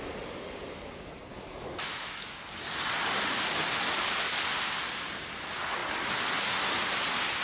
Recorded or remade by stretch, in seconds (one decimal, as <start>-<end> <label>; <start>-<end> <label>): 0.0-1.3 recorded; 1.3-2.4 remade; 2.4-7.4 recorded